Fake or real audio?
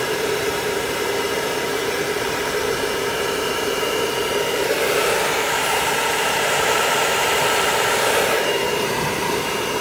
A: fake